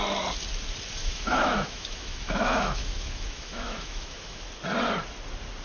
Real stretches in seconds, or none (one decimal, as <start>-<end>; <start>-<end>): 0.0-1.0; 4.4-5.6